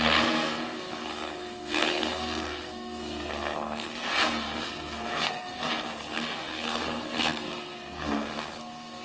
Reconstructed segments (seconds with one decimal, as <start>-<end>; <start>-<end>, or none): 0.0-9.0